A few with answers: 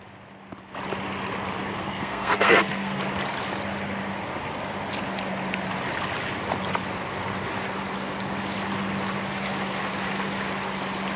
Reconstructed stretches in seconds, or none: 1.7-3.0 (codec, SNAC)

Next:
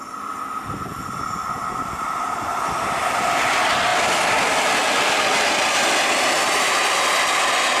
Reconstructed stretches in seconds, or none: 3.9-4.5 (vocoder, BigVGAN v2)